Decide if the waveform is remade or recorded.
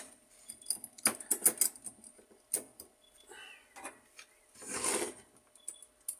recorded